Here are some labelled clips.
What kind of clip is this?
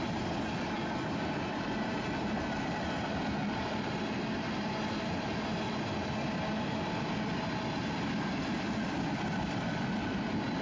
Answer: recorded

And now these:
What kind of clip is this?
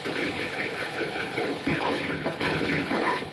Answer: remade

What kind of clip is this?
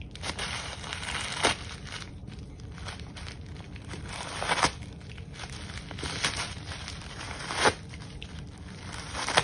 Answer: remade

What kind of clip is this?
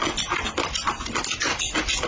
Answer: recorded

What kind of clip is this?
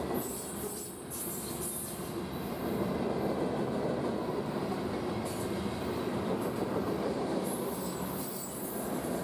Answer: recorded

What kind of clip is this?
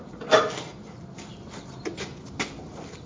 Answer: recorded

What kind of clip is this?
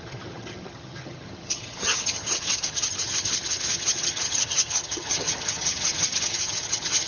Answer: remade